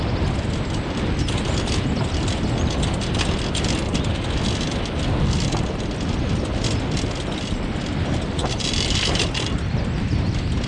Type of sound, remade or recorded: recorded